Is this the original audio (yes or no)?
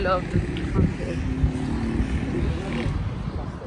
yes